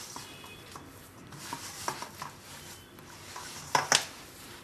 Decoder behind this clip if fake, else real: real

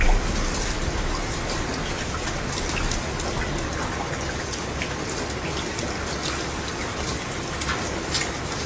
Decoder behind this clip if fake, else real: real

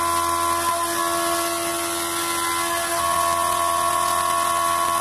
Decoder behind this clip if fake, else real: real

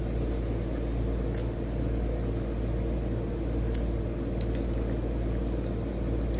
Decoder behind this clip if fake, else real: real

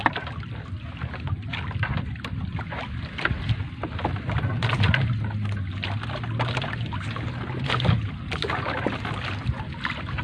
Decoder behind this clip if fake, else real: real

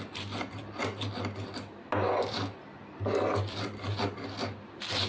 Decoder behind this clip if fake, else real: real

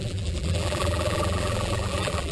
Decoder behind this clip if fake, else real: fake, vocoder, BigVGAN v2